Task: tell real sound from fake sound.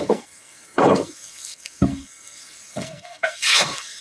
fake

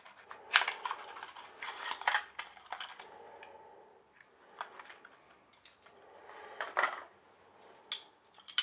real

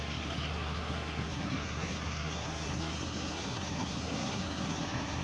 fake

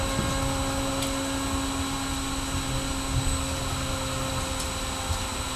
real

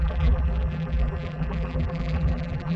fake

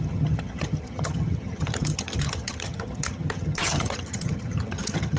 fake